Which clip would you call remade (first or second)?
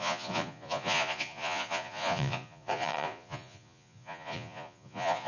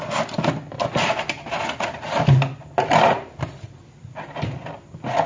first